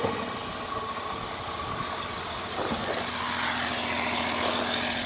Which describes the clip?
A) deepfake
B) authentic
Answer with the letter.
B